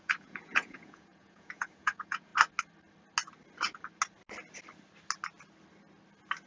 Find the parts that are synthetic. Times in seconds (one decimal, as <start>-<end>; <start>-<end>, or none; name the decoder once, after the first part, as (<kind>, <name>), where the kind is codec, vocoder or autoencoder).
0.0-2.3 (vocoder, Vocos)